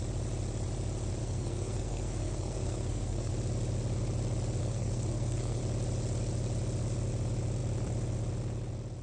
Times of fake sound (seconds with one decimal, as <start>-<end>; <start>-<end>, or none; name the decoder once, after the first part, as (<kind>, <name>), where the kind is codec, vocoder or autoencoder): 1.2-3.3 (codec, SNAC); 4.6-5.6